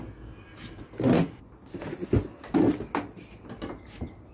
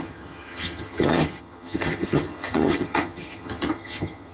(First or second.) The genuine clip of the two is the first